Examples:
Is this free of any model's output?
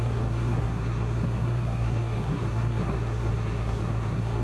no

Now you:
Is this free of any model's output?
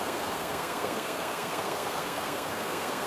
no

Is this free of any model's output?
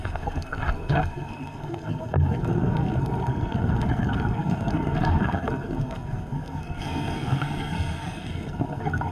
no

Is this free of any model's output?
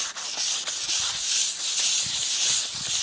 yes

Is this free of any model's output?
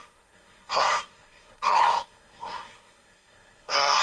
no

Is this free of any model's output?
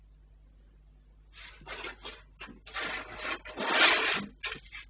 yes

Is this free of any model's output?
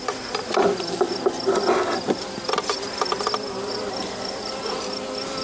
yes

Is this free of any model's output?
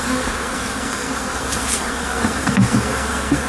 no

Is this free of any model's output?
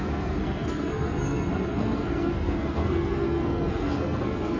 no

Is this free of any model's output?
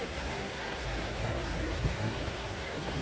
no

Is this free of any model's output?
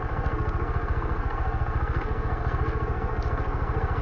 no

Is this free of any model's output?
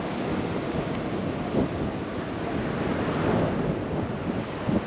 yes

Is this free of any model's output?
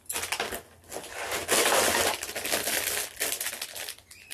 yes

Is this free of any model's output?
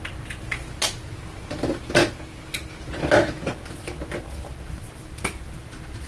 yes